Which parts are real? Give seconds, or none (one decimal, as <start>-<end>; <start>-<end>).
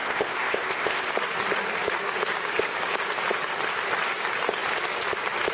1.1-5.5